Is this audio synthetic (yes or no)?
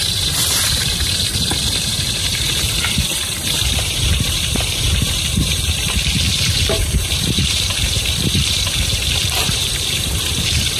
yes